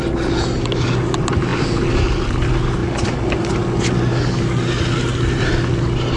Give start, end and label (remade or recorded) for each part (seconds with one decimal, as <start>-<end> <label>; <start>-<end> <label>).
0.0-6.2 recorded